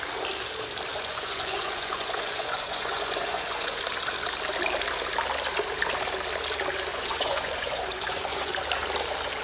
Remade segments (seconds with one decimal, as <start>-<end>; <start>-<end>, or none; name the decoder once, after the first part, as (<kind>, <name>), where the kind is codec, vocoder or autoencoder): 0.9-3.8 (vocoder, Vocos); 6.9-8.5